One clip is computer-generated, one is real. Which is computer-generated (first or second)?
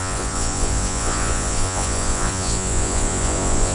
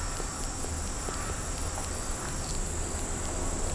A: first